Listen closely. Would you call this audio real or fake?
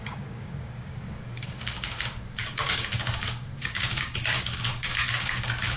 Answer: fake